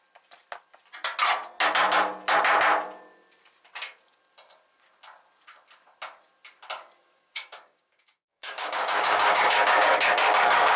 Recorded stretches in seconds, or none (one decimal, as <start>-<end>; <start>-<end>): 0.0-7.0